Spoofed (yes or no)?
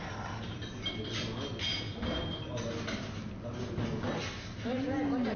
no